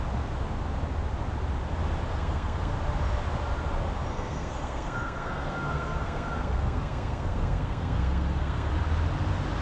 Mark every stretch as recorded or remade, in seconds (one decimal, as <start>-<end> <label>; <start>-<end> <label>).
0.0-2.1 recorded; 2.1-2.7 remade; 2.7-4.1 recorded; 4.1-8.7 remade; 8.7-9.6 recorded